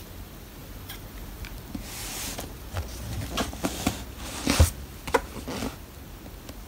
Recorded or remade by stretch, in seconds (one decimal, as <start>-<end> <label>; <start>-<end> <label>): 0.0-6.7 recorded